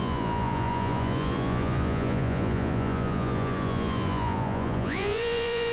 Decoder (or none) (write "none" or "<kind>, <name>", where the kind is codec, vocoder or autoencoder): vocoder, Vocos